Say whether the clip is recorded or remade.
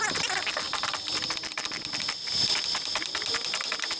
recorded